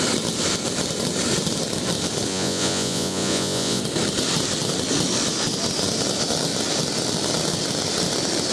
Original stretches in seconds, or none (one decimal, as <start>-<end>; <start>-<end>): 0.0-2.3; 3.8-8.5